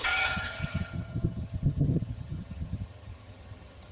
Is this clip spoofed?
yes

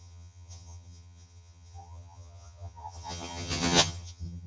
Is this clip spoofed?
yes